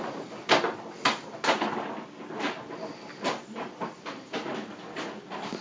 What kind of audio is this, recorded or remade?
recorded